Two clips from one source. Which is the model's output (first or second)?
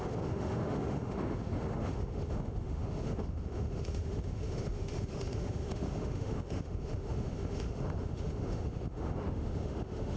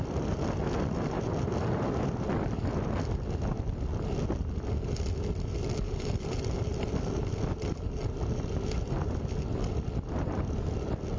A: first